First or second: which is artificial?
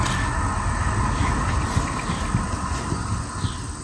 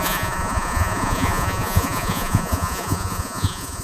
second